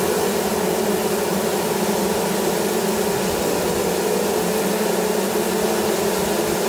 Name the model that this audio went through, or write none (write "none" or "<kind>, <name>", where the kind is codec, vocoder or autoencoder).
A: none